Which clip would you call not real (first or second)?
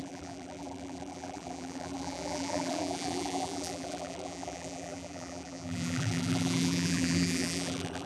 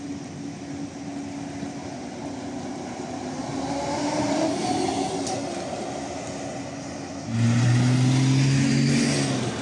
first